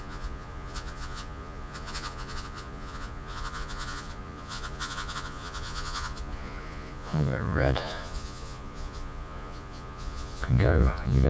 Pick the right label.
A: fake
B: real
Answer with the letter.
A